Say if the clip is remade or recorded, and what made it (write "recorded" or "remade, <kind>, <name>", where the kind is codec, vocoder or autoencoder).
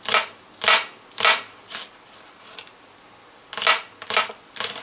recorded